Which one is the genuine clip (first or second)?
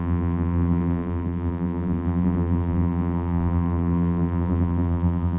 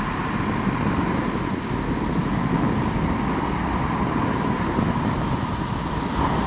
second